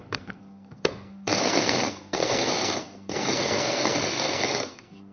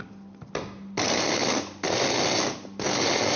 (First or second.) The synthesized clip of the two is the first